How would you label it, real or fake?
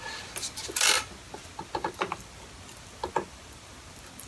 real